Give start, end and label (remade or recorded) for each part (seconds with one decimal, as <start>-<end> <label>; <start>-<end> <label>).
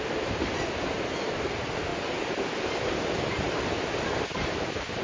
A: 0.0-5.0 recorded